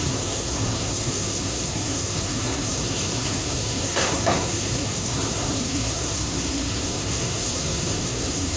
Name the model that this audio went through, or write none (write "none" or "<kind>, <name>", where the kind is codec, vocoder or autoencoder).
codec, SNAC